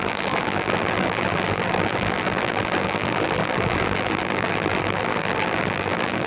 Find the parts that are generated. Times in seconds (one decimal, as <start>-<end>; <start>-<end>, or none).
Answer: 0.0-6.3